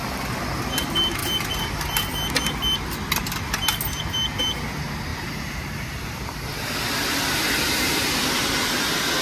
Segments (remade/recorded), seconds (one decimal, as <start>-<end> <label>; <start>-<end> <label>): 0.0-5.1 recorded; 5.1-7.6 remade; 7.6-9.2 recorded